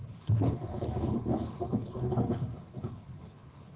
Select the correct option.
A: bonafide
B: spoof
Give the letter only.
B